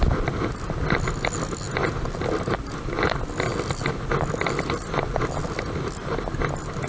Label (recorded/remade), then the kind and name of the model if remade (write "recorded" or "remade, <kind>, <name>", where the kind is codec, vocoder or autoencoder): recorded